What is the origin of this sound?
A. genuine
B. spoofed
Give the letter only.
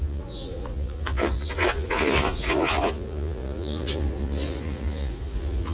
B